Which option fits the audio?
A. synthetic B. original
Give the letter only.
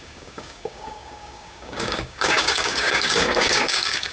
A